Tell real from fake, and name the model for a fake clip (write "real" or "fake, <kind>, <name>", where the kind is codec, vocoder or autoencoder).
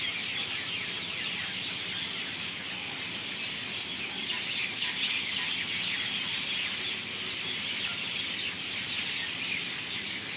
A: real